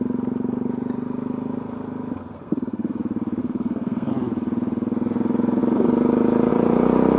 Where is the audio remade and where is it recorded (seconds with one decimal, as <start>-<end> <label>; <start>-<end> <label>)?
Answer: 0.0-2.2 recorded; 2.2-3.0 remade; 3.0-3.4 recorded; 3.4-4.1 remade; 4.1-7.2 recorded